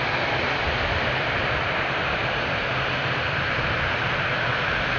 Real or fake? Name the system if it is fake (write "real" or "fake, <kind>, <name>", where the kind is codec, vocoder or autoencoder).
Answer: fake, vocoder, BigVGAN v2